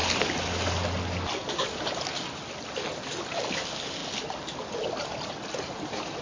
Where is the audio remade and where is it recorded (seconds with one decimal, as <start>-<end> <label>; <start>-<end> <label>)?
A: 0.0-6.2 recorded